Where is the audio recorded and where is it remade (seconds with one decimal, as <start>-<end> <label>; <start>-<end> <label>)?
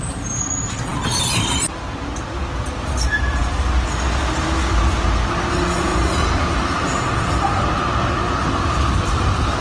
0.0-8.4 recorded; 8.4-9.6 remade